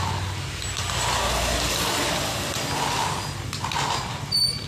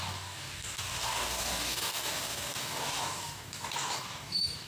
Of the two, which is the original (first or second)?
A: first